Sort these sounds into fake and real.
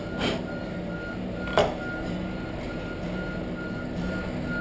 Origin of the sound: real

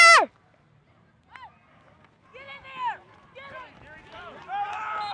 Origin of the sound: real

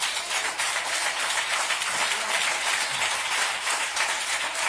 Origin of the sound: fake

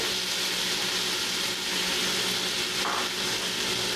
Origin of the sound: real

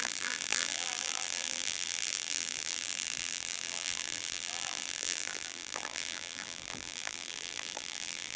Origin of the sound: fake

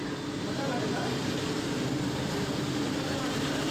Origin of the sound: real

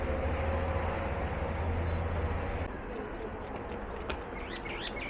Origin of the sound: real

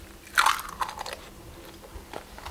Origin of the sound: real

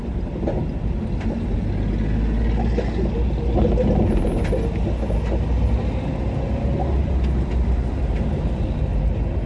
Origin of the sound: real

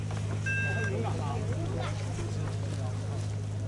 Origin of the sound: real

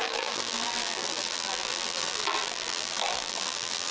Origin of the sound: fake